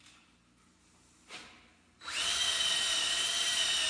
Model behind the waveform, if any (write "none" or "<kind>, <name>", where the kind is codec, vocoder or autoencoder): none